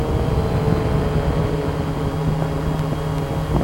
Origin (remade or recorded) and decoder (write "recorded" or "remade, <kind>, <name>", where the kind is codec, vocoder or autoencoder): recorded